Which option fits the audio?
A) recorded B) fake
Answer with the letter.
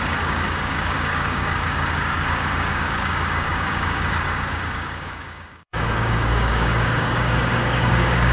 B